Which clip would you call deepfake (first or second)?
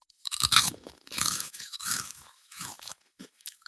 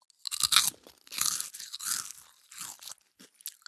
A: first